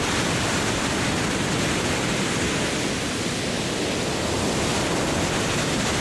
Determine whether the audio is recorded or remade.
recorded